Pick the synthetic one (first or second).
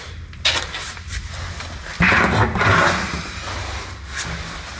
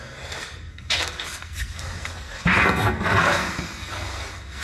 second